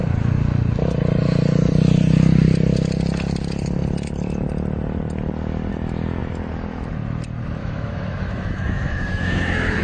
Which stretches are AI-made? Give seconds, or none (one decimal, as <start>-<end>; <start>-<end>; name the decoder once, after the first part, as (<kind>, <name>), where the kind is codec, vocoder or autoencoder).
7.6-9.8 (autoencoder, DAC-VAE)